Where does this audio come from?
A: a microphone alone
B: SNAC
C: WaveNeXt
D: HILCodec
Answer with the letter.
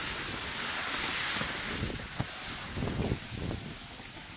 A